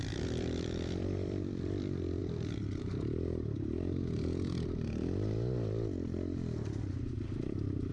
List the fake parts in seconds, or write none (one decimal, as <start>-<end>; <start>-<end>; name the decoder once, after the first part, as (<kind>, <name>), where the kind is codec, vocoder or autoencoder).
0.0-2.2 (vocoder, BigVGAN v2); 6.8-7.9